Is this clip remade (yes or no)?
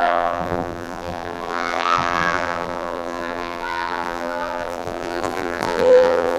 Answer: yes